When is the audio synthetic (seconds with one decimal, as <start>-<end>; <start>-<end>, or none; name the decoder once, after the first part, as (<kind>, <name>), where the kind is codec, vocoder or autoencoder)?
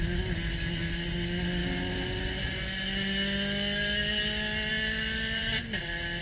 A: none